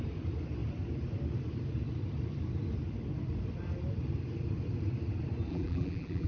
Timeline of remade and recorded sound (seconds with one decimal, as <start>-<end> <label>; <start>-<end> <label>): 0.0-5.5 recorded; 5.5-6.3 remade